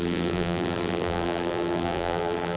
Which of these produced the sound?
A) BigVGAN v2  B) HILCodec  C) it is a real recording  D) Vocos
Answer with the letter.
A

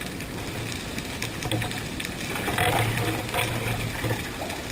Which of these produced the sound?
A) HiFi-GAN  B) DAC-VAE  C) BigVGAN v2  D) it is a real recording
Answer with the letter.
D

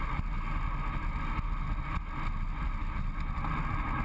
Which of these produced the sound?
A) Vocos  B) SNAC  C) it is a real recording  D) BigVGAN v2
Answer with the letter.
C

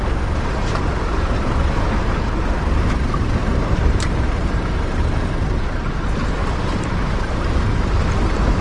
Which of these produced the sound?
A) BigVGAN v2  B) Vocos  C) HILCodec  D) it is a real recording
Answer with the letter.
A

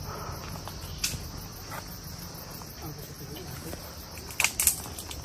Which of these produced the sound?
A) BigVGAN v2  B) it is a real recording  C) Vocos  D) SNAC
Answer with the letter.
B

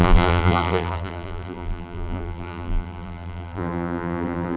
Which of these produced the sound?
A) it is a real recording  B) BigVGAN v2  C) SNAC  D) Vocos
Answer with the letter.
B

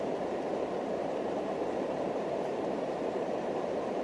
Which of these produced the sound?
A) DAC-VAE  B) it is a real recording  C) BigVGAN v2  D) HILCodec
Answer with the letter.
C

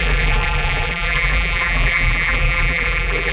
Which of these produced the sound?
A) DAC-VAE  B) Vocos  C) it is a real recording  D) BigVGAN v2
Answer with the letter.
D